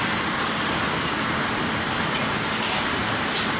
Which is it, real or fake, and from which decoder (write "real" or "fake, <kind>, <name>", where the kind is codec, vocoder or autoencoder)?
real